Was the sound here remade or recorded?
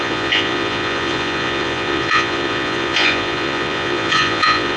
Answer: remade